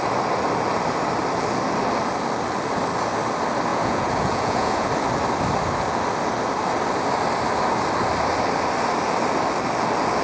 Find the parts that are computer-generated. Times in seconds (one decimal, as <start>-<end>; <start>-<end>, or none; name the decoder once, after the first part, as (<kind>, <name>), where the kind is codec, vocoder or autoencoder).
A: 3.7-4.9 (vocoder, Vocos)